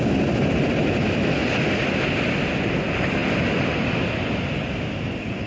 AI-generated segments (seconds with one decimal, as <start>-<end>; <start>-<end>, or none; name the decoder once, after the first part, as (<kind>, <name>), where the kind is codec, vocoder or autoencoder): none

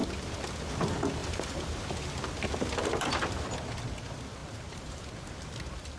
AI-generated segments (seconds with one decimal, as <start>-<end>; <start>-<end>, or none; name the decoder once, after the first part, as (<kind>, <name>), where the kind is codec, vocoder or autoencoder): 1.2-1.7 (vocoder, BigVGAN v2); 4.4-5.1

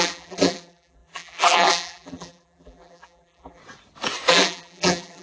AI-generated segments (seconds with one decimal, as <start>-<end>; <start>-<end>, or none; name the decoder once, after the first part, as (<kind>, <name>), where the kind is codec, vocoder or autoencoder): 0.0-3.6 (vocoder, BigVGAN v2); 4.3-5.2

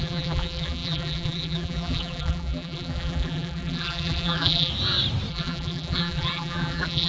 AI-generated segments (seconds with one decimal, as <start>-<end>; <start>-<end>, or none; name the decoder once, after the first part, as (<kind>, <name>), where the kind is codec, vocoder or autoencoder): 0.0-4.7 (vocoder, BigVGAN v2); 5.3-7.1

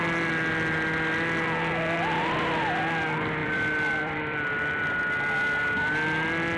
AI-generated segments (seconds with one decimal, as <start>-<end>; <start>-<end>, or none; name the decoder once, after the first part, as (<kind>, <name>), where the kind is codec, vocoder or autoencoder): 3.4-5.0 (vocoder, BigVGAN v2)

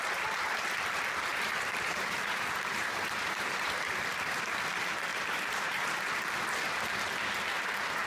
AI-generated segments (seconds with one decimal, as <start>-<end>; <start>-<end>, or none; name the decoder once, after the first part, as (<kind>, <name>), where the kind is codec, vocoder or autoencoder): 1.3-4.1 (vocoder, BigVGAN v2); 5.1-6.1

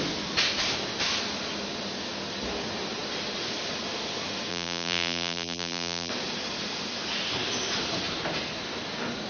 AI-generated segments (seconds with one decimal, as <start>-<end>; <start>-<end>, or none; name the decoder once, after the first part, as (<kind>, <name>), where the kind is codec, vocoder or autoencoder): 4.5-6.1 (vocoder, BigVGAN v2)